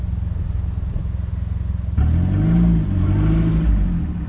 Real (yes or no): yes